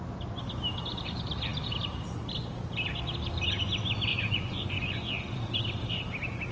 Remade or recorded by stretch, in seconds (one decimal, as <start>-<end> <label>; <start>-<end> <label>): 0.0-4.1 recorded; 4.1-5.4 remade; 5.4-6.5 recorded

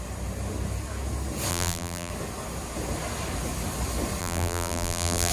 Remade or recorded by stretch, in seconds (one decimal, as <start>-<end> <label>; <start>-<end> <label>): 0.0-1.5 recorded; 1.5-2.1 remade; 2.1-4.2 recorded; 4.2-5.3 remade